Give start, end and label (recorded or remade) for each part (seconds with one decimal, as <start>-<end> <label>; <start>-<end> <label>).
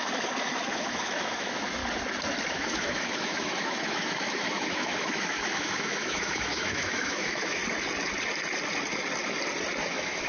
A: 0.0-1.8 remade; 1.8-2.5 recorded; 2.5-7.6 remade; 7.6-9.8 recorded; 9.8-10.3 remade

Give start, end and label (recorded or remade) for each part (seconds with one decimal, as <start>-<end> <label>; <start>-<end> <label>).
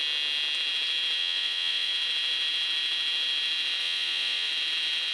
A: 0.0-1.2 recorded; 1.2-1.9 remade; 1.9-3.8 recorded; 3.8-4.5 remade; 4.5-5.1 recorded